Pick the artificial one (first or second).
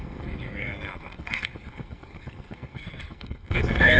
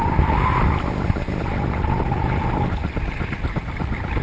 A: first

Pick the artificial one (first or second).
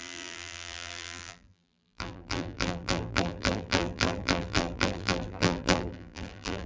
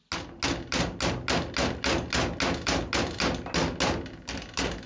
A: first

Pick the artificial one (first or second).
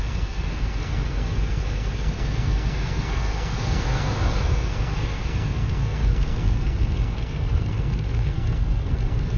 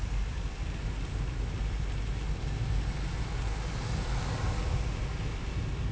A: first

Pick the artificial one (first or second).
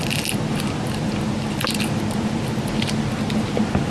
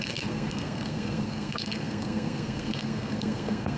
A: second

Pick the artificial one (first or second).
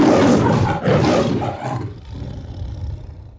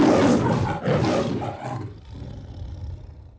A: first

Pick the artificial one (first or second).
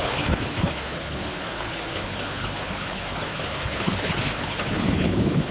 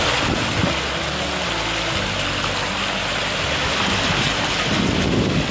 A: first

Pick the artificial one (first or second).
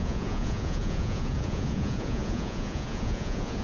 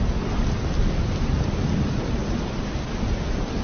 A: first